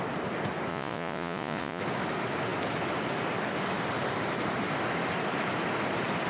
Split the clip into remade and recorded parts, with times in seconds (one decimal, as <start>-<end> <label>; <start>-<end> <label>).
0.0-0.7 recorded; 0.7-1.8 remade; 1.8-6.3 recorded